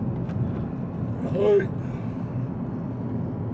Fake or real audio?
real